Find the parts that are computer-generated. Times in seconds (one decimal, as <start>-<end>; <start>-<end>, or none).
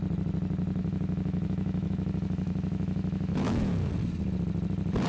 0.8-3.9